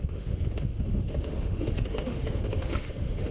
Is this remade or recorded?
remade